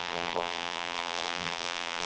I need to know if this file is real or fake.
fake